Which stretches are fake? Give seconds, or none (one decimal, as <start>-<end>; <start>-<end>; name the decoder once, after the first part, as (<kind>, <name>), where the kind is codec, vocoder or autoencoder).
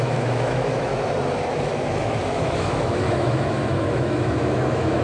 0.0-0.9 (autoencoder, DAC-VAE); 1.6-5.0